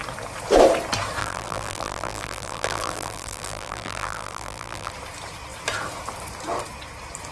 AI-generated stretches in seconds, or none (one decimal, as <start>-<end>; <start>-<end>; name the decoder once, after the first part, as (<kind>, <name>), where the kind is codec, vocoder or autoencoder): 1.2-4.9 (vocoder, BigVGAN v2)